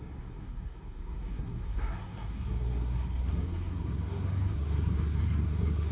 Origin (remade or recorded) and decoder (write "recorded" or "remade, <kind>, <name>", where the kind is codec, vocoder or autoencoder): remade, codec, SNAC